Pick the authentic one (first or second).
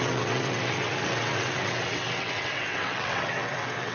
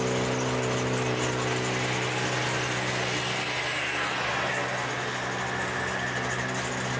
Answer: second